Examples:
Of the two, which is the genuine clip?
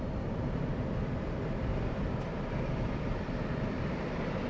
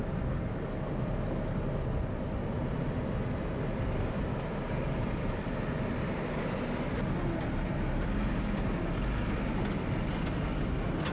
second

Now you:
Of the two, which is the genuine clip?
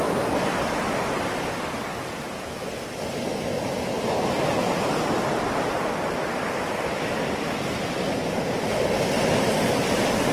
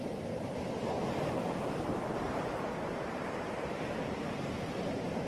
first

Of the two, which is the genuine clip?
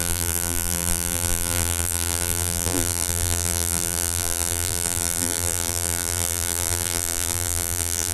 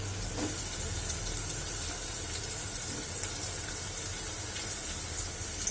second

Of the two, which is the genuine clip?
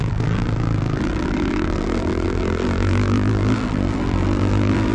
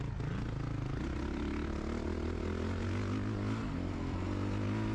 second